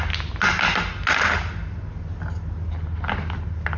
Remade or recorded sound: recorded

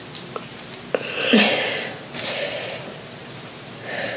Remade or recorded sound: recorded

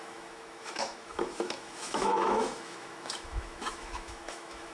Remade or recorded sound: remade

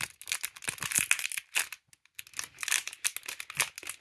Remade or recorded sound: recorded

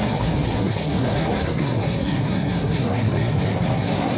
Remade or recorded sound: remade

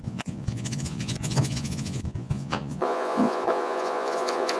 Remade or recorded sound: remade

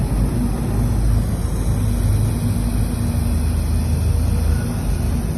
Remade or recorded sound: recorded